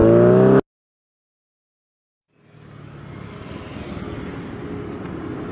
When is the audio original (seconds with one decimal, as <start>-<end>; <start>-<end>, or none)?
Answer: 0.0-5.5